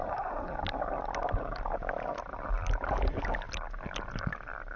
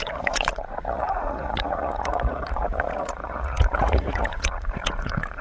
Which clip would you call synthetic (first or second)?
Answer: second